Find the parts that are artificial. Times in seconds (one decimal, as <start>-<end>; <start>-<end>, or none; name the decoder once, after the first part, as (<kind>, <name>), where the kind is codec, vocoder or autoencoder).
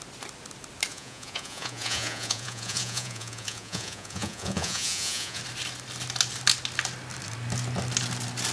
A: 0.9-5.4 (vocoder, Vocos)